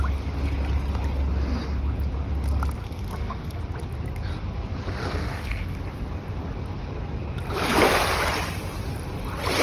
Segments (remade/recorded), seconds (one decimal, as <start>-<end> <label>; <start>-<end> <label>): 0.0-2.8 recorded; 2.8-3.6 remade; 3.6-5.0 recorded; 5.0-5.7 remade; 5.7-9.6 recorded